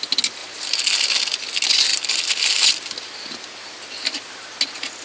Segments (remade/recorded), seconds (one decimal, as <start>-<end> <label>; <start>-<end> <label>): 0.0-5.0 recorded